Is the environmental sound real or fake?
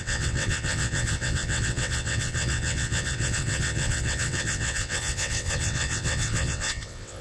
fake